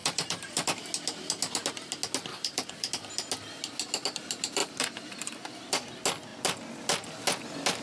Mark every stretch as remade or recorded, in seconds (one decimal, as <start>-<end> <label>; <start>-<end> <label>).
0.0-0.8 remade; 0.8-2.3 recorded; 2.3-2.9 remade; 2.9-4.6 recorded; 4.6-5.5 remade; 5.5-7.8 recorded